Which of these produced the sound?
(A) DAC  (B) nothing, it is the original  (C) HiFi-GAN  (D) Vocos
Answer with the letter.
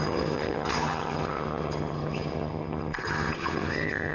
C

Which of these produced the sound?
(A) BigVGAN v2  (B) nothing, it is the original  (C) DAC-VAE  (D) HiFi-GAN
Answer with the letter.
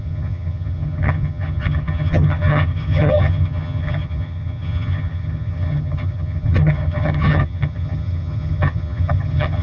D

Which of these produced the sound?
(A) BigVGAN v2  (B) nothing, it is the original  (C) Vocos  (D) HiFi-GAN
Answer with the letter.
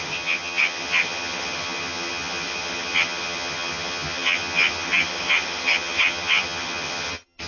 D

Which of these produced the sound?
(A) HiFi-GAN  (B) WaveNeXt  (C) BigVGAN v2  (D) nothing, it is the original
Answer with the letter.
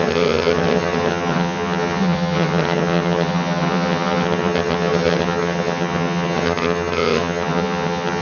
A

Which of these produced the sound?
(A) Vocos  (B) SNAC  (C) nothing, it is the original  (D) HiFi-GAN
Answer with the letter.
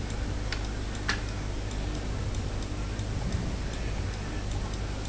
C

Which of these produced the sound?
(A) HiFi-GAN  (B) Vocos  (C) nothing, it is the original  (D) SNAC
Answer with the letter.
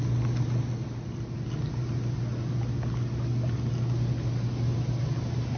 C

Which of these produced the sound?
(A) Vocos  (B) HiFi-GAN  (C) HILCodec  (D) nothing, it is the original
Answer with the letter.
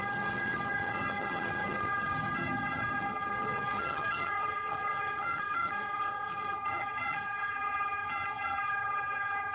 B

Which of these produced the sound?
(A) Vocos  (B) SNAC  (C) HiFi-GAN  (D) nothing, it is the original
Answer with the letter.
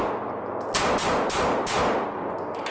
D